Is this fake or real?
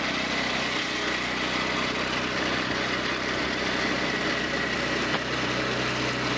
real